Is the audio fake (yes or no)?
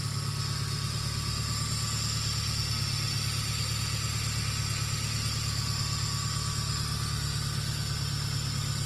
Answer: no